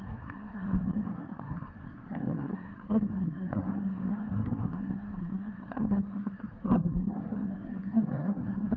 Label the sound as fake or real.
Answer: fake